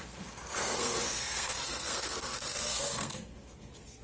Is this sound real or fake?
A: fake